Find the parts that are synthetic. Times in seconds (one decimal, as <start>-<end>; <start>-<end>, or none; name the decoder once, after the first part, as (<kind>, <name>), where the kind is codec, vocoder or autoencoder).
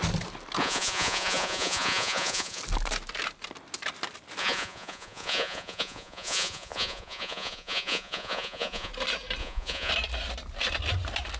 0.6-2.6 (vocoder, Vocos); 4.4-8.9; 9.4-9.9